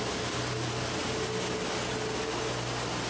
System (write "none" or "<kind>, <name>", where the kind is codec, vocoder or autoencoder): none